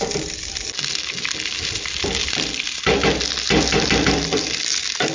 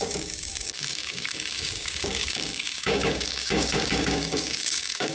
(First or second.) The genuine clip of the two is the first